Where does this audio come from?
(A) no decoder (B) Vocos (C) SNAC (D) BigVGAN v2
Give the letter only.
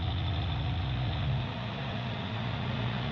B